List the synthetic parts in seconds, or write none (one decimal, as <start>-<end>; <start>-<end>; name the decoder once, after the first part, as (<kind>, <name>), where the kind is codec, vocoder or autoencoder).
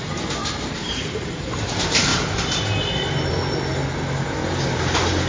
0.4-1.5 (vocoder, BigVGAN v2)